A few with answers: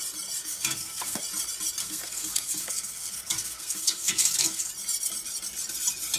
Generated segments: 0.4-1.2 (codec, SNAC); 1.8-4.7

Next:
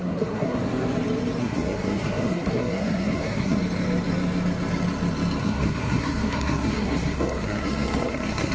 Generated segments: 0.0-0.6 (codec, SNAC); 1.4-3.6; 5.4-8.5

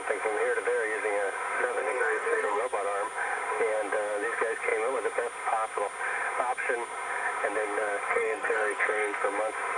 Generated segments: 1.8-2.6 (codec, SNAC); 8.1-9.2

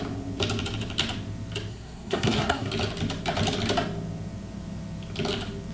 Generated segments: 1.7-2.7 (codec, SNAC)

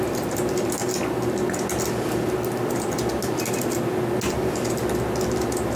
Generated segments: none

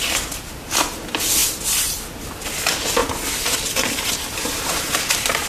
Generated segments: none

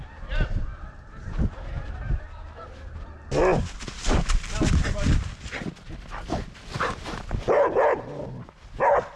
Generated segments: none